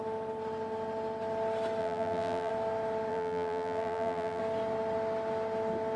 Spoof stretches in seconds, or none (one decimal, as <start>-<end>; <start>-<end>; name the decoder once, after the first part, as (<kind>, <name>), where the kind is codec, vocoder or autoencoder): 1.8-2.5 (vocoder, BigVGAN v2); 3.1-4.4